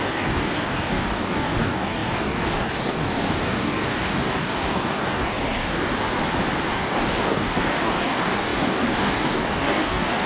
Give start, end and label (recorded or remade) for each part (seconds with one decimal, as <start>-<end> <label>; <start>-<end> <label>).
0.0-5.9 remade; 5.9-6.7 recorded; 6.7-10.3 remade

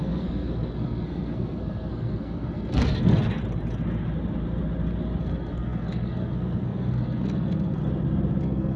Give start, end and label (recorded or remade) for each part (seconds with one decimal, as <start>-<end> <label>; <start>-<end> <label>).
0.0-3.2 remade; 3.2-5.2 recorded; 5.2-7.8 remade; 7.8-8.4 recorded; 8.4-8.8 remade

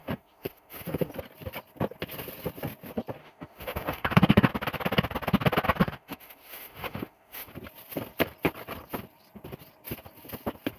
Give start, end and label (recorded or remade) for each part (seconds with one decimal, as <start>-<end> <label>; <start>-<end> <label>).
0.0-1.1 remade; 1.1-3.2 recorded; 3.2-4.5 remade; 4.5-5.8 recorded; 5.8-7.5 remade; 7.5-10.8 recorded

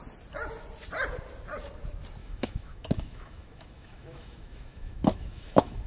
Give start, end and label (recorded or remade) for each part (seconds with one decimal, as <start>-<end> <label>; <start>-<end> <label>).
0.0-2.2 recorded; 2.2-5.9 remade

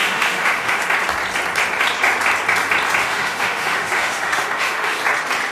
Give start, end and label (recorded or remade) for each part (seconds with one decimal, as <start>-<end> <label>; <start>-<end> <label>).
0.0-0.8 remade; 0.8-3.0 recorded; 3.0-5.0 remade; 5.0-5.5 recorded

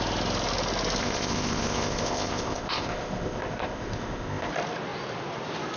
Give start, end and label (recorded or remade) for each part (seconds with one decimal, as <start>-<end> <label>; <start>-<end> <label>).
0.0-1.0 recorded; 1.0-4.5 remade; 4.5-5.8 recorded